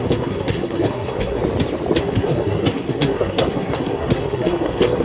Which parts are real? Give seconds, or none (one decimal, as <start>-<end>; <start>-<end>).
1.4-2.0